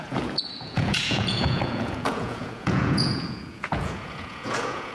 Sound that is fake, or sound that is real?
fake